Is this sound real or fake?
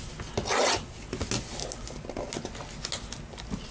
real